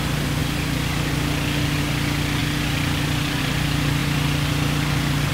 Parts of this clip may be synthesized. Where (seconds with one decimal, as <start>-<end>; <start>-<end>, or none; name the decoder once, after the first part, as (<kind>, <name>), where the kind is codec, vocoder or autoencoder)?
4.0-5.3 (vocoder, BigVGAN v2)

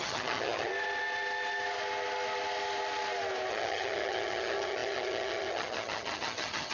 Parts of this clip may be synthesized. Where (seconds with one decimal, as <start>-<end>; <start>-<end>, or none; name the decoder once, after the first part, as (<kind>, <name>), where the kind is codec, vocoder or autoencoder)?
0.0-0.7 (vocoder, HiFi-GAN); 3.5-6.7

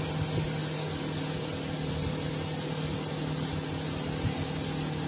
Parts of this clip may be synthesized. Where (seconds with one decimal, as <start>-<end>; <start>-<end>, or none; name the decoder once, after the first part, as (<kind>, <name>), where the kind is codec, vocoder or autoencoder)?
none

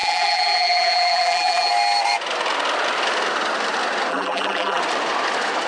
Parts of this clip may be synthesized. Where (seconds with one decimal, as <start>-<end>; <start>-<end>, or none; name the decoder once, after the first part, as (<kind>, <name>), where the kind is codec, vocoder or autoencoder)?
0.0-1.7 (vocoder, BigVGAN v2); 4.1-4.8

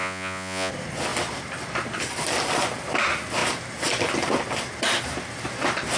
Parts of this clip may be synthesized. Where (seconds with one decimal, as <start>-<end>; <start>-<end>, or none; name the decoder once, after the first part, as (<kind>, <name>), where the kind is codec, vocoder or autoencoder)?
0.0-0.7 (vocoder, Vocos)